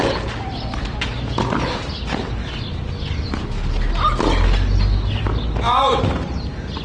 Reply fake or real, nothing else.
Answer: real